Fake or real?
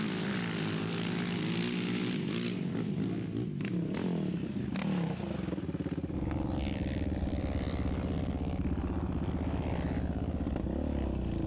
real